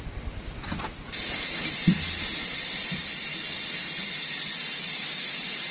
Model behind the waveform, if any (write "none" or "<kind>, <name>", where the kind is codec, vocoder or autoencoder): none